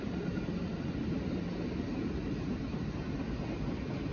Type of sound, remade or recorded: recorded